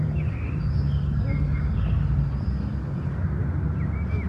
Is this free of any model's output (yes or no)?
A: yes